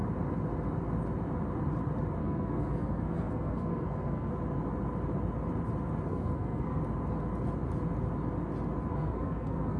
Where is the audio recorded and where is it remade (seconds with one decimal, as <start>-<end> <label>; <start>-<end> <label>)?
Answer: 0.0-2.2 recorded; 2.2-4.3 remade; 4.3-6.1 recorded; 6.1-6.8 remade; 6.8-8.9 recorded; 8.9-9.8 remade